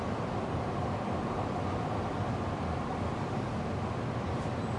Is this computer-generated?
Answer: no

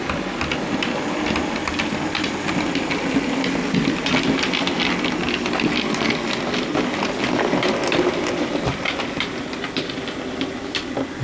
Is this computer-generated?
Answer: no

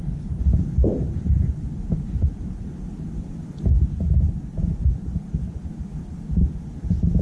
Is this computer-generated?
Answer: no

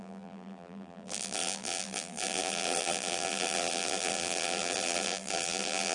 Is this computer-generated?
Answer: yes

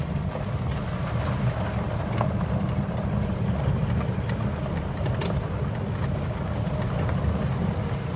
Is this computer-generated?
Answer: no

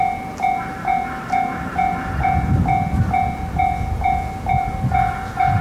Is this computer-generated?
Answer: no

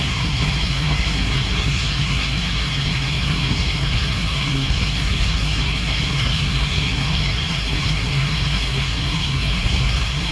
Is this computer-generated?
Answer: yes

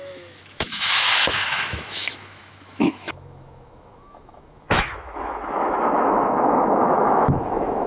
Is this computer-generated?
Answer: yes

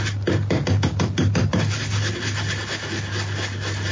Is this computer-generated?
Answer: no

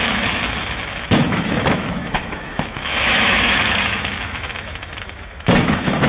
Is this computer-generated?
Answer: yes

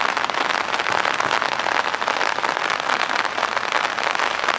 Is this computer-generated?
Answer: no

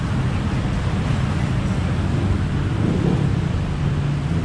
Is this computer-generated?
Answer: no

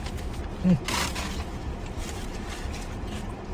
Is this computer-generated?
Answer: yes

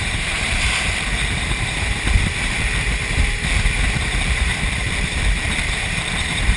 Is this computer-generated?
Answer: yes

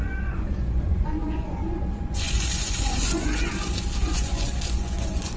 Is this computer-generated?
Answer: yes